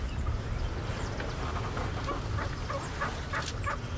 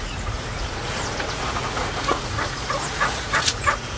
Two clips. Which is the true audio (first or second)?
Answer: first